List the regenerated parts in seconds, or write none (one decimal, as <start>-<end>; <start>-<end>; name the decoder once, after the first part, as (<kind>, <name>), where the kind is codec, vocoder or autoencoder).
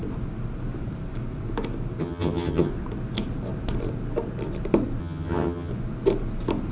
2.0-2.7 (vocoder, HiFi-GAN); 5.0-5.7